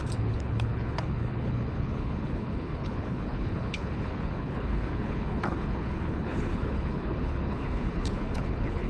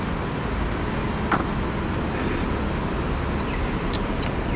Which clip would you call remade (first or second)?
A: first